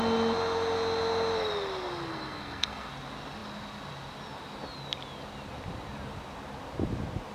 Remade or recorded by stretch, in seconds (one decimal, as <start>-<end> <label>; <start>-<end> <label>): 0.0-2.1 recorded; 2.1-2.9 remade; 2.9-7.3 recorded